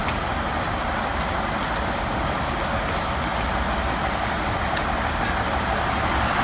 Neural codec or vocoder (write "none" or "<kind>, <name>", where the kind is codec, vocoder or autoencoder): none